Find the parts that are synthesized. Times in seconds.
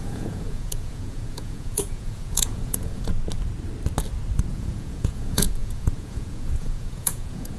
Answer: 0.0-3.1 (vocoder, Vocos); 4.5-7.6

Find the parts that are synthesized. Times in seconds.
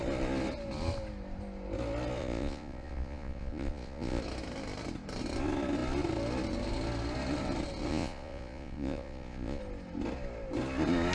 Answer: 2.2-4.2 (vocoder, Vocos); 7.9-9.6